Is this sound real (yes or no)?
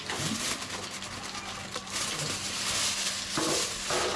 yes